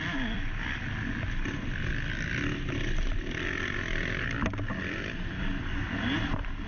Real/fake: real